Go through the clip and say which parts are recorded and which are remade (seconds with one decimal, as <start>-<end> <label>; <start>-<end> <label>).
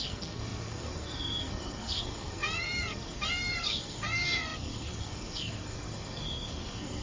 0.0-7.0 remade